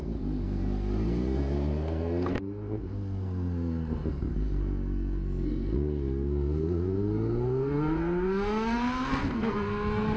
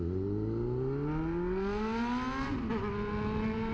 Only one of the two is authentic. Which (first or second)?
second